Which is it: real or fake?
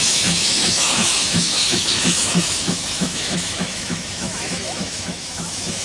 fake